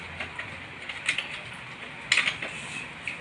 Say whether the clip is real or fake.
real